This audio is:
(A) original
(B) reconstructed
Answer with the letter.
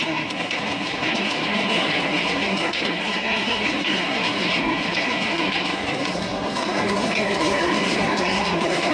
B